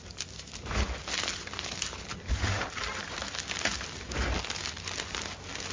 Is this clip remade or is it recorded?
recorded